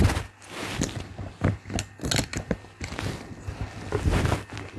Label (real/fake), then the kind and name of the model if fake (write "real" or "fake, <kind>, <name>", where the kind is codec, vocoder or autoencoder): real